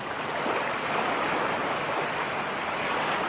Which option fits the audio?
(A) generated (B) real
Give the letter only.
B